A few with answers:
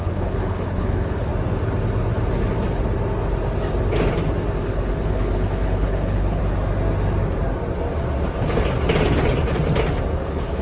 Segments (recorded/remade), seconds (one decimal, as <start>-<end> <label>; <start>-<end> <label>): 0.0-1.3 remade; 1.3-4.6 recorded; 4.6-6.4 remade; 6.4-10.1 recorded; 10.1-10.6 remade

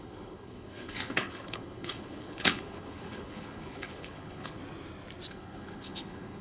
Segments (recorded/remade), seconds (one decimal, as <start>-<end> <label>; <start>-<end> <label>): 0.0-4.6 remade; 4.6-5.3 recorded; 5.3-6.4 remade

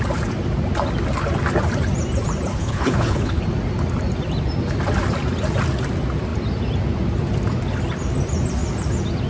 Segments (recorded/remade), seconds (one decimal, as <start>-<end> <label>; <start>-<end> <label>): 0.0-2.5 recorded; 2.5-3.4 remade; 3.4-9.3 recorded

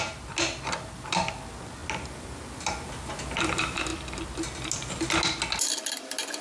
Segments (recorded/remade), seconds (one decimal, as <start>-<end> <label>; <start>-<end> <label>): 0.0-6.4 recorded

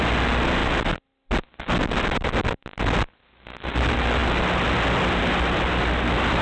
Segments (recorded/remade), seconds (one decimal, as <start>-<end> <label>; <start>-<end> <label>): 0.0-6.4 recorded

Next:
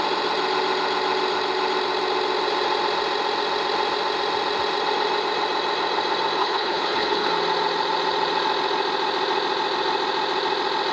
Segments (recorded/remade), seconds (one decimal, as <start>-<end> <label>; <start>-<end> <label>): 0.0-6.4 recorded; 6.4-7.3 remade; 7.3-10.9 recorded

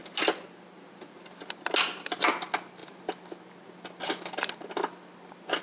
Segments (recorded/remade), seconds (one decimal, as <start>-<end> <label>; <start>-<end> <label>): 0.0-5.6 recorded

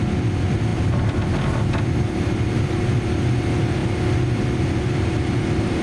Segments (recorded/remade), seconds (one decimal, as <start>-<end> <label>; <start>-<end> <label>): 0.0-5.8 recorded